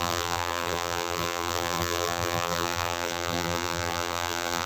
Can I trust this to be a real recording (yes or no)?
no